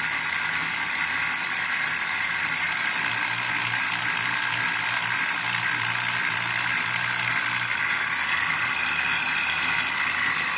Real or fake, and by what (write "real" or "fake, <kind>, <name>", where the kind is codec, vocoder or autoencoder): fake, vocoder, BigVGAN v2